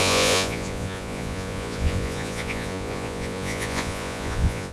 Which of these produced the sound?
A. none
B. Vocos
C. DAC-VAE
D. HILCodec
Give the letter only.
B